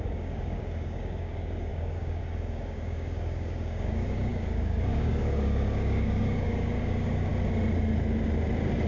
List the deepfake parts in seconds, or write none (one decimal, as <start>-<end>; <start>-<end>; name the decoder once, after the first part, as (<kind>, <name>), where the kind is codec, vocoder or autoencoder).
0.0-7.3 (codec, DAC)